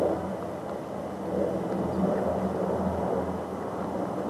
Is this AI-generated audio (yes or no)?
no